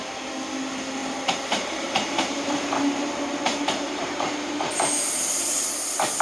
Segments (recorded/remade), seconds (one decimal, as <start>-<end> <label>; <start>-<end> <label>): 0.0-1.0 recorded; 1.0-4.7 remade; 4.7-6.2 recorded